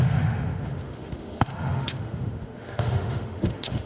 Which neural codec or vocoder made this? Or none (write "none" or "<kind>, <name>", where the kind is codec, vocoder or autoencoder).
autoencoder, DAC-VAE